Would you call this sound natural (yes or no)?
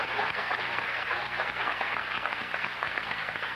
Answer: no